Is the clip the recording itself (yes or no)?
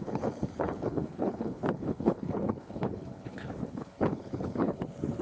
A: no